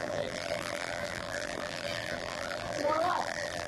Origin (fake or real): fake